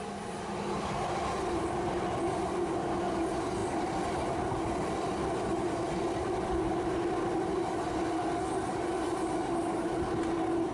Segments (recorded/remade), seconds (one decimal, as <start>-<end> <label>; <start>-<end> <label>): 0.0-10.7 recorded